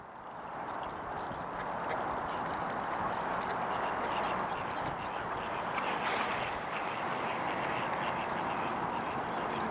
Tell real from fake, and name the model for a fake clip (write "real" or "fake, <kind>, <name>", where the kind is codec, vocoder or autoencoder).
real